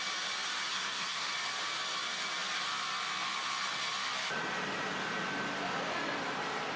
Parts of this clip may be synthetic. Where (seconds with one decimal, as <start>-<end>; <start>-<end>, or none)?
0.7-1.3